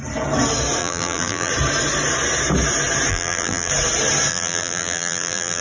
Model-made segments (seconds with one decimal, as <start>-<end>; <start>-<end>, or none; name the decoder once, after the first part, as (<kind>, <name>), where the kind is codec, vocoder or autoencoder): 0.8-1.5 (vocoder, BigVGAN v2); 3.1-3.7; 4.3-5.6